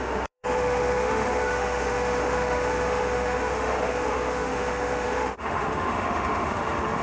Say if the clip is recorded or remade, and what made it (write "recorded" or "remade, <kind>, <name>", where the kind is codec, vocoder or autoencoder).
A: remade, autoencoder, DAC-VAE